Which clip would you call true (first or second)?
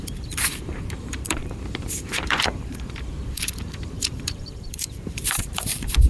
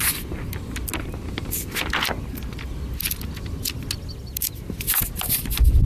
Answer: second